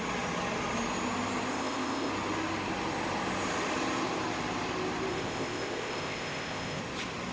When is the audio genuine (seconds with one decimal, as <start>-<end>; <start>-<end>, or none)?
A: 0.0-1.5; 2.1-5.1; 6.8-7.3